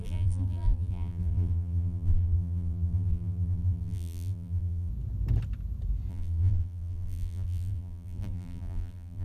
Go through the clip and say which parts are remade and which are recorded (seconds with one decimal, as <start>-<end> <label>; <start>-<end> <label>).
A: 0.0-4.9 remade; 4.9-6.1 recorded; 6.1-9.2 remade